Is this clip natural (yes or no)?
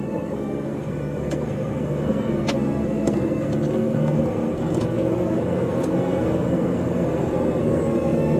no